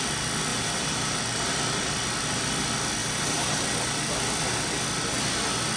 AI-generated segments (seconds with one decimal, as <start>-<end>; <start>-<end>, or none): 0.5-1.2; 3.0-4.0